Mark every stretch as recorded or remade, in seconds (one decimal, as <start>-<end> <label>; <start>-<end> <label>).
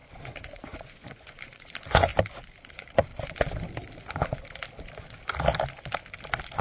0.0-2.1 remade; 2.1-2.7 recorded; 2.7-3.1 remade; 3.1-6.6 recorded